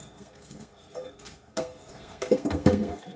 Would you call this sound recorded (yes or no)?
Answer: no